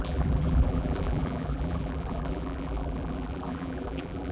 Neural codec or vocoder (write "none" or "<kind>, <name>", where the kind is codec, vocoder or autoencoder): vocoder, BigVGAN v2